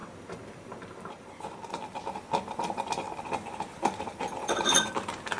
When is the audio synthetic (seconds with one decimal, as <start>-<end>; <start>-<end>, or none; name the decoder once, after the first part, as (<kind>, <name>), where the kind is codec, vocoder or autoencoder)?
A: 4.4-4.9 (vocoder, WaveNeXt)

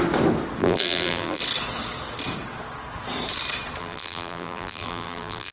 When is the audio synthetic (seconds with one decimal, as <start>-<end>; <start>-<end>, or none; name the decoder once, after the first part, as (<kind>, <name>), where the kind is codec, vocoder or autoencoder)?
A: 0.6-1.4 (vocoder, BigVGAN v2); 3.8-5.5

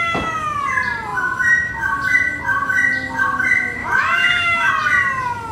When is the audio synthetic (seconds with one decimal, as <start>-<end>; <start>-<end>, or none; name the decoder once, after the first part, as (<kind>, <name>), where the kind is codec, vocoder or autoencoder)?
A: 3.8-4.7 (autoencoder, DAC-VAE)